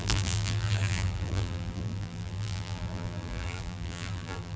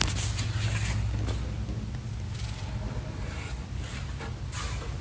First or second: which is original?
second